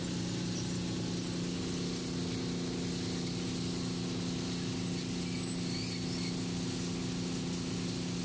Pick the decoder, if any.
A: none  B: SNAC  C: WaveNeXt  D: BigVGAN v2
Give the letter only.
A